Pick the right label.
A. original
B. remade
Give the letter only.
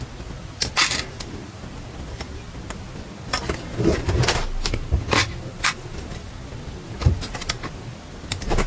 A